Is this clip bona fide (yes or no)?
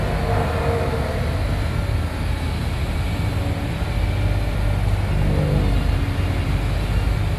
yes